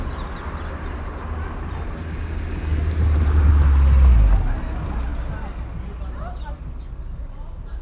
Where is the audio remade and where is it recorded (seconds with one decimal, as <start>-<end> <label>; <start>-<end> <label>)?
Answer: 0.0-7.8 recorded